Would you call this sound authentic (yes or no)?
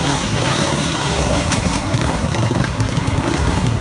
no